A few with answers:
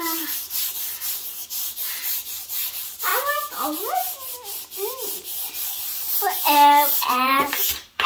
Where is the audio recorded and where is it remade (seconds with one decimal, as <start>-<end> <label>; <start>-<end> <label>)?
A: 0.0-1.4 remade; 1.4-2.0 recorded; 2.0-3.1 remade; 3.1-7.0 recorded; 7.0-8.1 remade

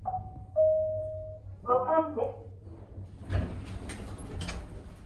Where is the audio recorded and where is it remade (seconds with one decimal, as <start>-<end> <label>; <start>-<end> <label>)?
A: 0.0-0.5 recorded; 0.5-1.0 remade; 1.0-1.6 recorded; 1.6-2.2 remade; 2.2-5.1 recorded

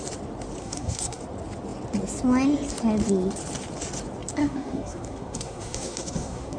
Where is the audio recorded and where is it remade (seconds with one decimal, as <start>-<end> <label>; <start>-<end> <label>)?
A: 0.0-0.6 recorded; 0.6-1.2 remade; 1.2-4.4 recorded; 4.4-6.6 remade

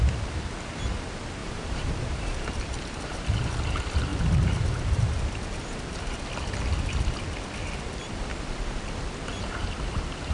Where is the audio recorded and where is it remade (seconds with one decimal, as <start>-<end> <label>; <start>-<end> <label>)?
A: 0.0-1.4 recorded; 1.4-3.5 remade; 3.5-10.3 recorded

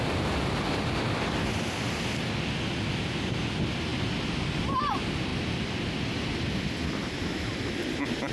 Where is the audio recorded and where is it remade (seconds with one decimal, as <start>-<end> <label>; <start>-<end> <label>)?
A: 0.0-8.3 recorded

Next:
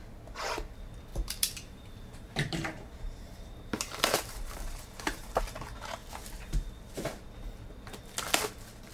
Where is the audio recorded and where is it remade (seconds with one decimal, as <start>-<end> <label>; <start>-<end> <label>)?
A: 0.0-1.1 recorded; 1.1-5.4 remade; 5.4-8.9 recorded

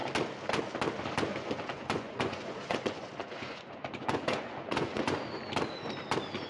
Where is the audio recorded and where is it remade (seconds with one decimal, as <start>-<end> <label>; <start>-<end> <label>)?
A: 0.0-1.3 recorded; 1.3-5.2 remade; 5.2-6.5 recorded

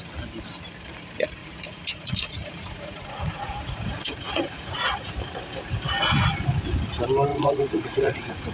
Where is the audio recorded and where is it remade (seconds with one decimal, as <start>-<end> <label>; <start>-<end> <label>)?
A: 0.0-1.4 recorded; 1.4-5.1 remade; 5.1-7.3 recorded; 7.3-8.5 remade